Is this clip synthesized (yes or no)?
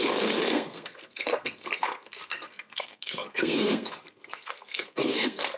yes